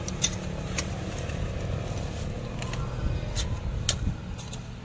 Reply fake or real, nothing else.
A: real